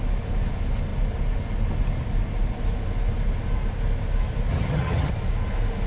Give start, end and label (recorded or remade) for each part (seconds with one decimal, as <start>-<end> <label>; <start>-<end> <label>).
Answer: 0.0-4.5 recorded; 4.5-5.1 remade; 5.1-5.9 recorded